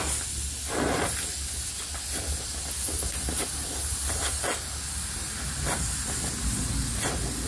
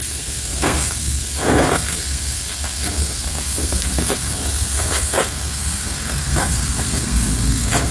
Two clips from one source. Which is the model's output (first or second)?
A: second